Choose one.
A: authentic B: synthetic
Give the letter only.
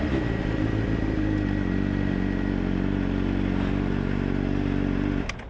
A